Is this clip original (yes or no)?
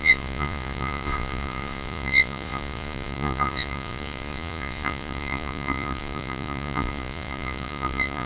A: no